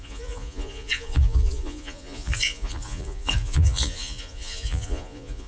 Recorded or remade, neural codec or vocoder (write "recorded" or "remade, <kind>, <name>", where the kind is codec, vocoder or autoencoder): remade, vocoder, Vocos